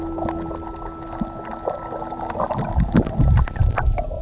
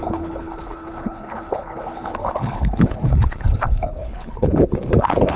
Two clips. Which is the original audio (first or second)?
first